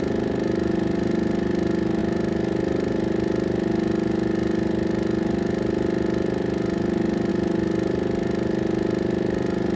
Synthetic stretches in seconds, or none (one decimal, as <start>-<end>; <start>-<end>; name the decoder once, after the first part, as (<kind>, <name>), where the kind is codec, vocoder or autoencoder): none